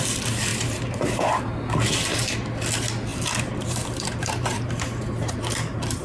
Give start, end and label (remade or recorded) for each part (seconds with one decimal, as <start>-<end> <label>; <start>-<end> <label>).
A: 0.0-0.5 recorded; 0.5-1.5 remade; 1.5-3.1 recorded; 3.1-5.6 remade; 5.6-6.0 recorded